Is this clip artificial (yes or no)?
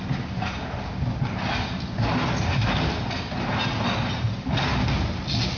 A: no